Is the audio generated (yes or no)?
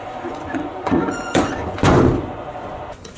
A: yes